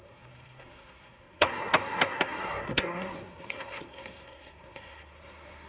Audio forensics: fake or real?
fake